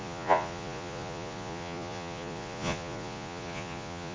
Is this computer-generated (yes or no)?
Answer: yes